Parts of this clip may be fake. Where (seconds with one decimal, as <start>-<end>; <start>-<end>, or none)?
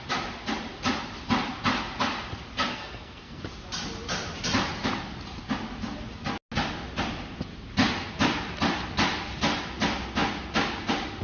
2.7-3.4